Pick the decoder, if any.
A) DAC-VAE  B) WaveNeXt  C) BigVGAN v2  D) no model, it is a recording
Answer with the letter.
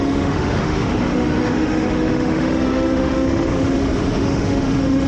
A